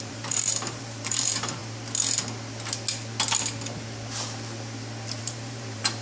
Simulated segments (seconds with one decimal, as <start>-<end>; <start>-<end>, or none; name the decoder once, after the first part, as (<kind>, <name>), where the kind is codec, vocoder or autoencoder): 0.0-1.6 (vocoder, BigVGAN v2); 5.2-6.0

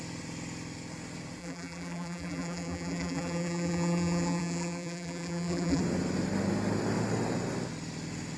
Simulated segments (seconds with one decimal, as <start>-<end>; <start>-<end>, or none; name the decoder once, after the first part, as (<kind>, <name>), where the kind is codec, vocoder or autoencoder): 1.4-5.8 (vocoder, BigVGAN v2)

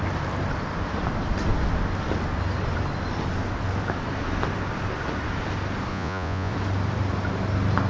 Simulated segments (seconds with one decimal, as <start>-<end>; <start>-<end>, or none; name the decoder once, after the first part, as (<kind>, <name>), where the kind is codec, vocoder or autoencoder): 5.9-6.5 (vocoder, Vocos)

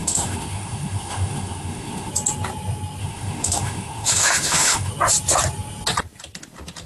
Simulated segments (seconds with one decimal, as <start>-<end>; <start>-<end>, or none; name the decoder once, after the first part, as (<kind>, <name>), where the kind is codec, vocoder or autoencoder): 0.0-2.1 (autoencoder, DAC-VAE); 3.0-4.9